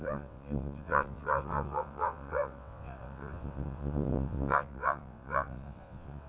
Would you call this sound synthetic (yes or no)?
yes